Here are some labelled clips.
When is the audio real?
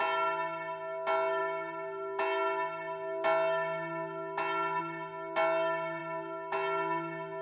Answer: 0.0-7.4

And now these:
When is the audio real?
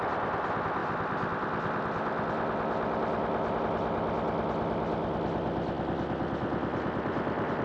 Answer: 0.0-7.6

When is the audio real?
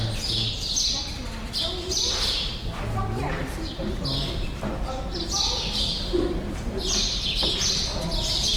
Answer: 0.0-3.4; 7.5-8.6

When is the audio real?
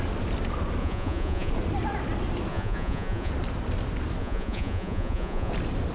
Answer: 0.0-0.8; 1.5-2.5; 3.3-4.2; 5.5-5.9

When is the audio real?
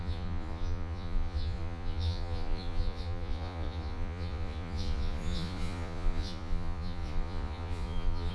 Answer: none